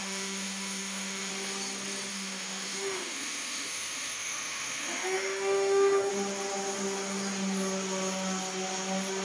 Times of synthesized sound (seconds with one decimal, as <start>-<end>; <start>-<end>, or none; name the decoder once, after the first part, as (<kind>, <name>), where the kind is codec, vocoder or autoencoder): 0.0-1.3 (autoencoder, DAC-VAE); 2.1-6.1